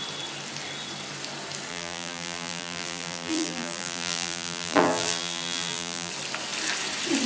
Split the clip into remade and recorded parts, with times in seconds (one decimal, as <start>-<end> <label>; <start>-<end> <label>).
0.0-1.7 recorded; 1.7-6.1 remade; 6.1-7.3 recorded